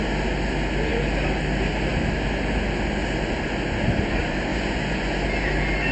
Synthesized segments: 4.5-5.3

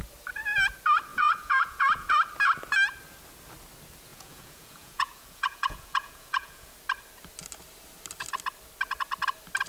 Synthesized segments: 1.1-2.1; 4.1-6.7

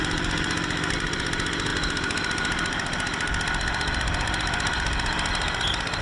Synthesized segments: none

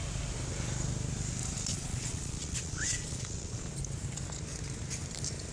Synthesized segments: 1.7-3.7